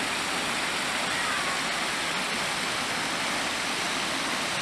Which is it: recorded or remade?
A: recorded